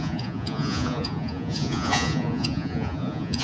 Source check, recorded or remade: remade